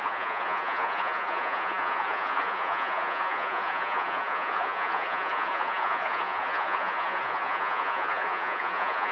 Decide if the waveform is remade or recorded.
remade